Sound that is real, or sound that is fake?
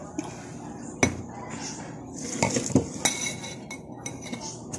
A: real